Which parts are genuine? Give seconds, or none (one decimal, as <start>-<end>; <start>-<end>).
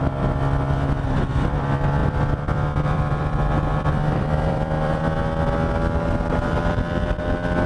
0.0-2.0; 5.2-7.7